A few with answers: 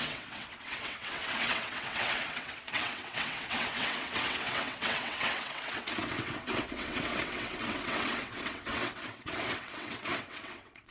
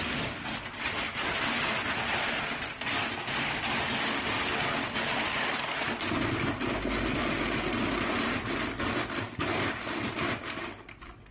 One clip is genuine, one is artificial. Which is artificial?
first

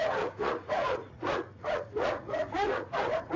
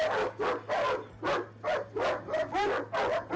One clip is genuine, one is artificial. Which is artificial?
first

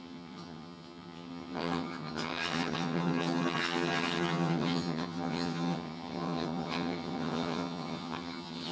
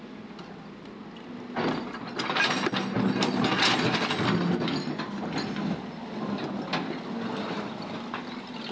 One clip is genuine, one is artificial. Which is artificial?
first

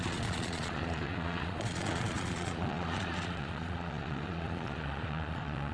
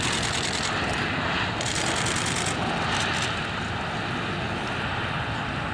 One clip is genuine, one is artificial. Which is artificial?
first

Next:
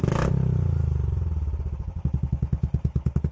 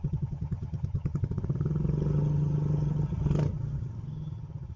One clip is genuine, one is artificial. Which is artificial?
second